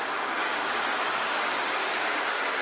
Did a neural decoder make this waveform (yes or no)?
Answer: yes